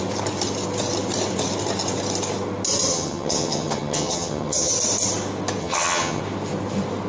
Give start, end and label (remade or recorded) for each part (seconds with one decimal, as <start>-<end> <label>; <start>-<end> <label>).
0.0-2.9 recorded; 2.9-4.7 remade; 4.7-5.6 recorded; 5.6-6.2 remade; 6.2-7.1 recorded